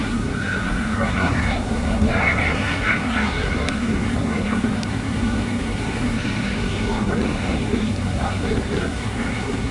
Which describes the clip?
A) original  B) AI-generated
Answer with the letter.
B